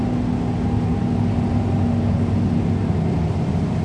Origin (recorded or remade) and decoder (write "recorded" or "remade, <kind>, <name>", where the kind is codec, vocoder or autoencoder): recorded